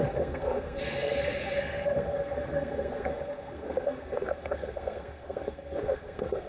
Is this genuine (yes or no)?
no